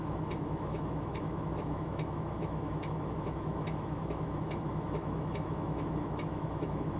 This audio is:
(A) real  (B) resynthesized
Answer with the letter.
B